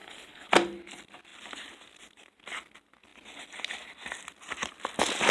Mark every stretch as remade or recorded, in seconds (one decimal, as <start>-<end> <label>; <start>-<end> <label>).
0.0-0.5 remade; 0.5-5.3 recorded